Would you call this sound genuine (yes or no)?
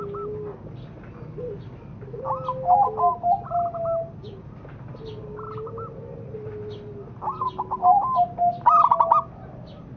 yes